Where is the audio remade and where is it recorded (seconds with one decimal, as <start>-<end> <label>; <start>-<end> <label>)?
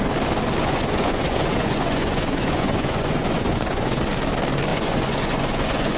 0.0-0.6 recorded; 0.6-4.0 remade; 4.0-4.7 recorded; 4.7-6.0 remade